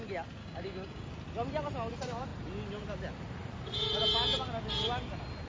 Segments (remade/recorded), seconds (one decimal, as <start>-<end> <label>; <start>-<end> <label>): 0.0-0.4 recorded; 0.4-1.1 remade; 1.1-5.5 recorded